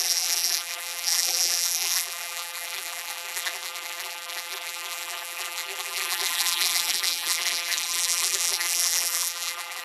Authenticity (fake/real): fake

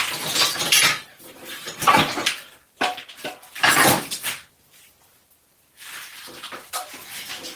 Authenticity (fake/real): fake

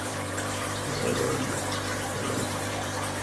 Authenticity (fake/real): fake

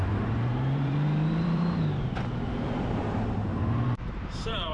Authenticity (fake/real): fake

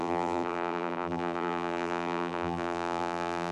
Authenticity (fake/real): fake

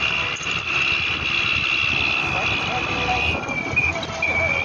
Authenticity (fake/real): real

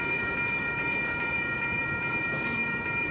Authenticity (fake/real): fake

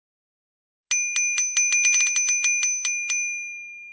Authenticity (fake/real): real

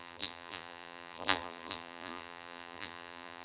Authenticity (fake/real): fake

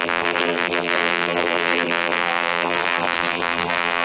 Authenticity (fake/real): fake